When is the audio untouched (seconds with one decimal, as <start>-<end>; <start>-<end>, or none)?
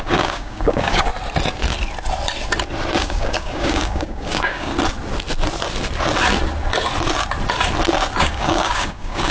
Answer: 1.1-3.0; 4.7-8.2